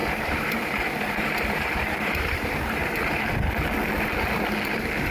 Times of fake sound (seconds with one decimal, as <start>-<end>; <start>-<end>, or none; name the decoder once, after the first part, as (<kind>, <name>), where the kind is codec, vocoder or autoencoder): 0.0-3.1 (vocoder, BigVGAN v2)